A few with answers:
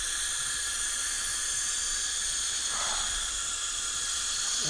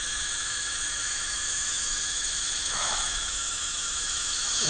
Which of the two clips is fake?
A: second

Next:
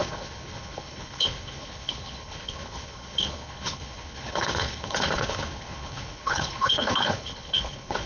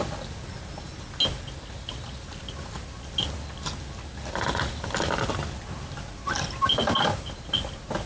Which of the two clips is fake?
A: first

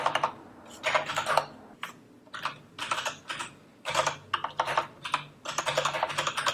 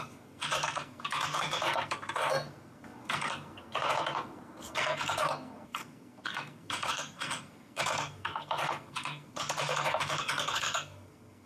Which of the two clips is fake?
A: second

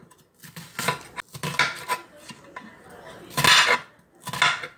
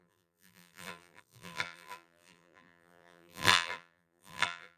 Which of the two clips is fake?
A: second